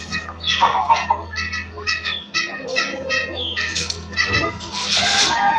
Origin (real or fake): fake